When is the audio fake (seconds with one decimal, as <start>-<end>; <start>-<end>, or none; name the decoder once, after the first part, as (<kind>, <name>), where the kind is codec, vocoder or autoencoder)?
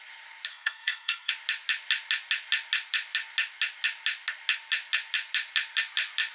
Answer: 0.5-1.3 (codec, SNAC)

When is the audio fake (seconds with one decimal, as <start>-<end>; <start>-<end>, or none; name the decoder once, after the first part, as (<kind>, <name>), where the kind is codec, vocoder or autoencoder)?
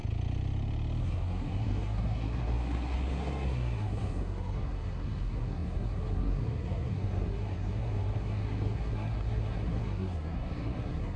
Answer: 1.0-11.2 (codec, SNAC)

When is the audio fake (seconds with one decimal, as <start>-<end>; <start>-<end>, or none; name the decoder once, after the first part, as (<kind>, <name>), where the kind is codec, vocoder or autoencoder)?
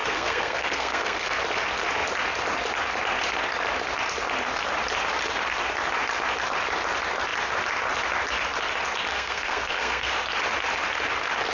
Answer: 0.0-1.4 (codec, SNAC); 9.1-10.1